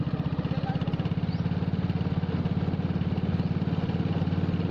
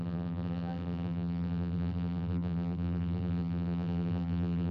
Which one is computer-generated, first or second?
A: second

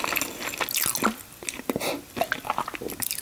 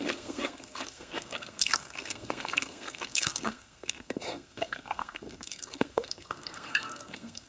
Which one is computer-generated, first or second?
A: second